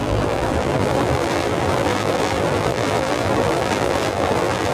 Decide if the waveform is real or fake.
fake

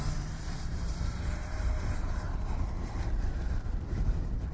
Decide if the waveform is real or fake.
fake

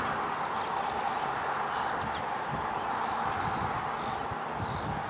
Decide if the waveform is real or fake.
real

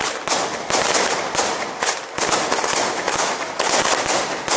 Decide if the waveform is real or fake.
real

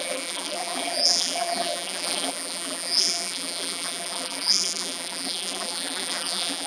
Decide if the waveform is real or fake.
fake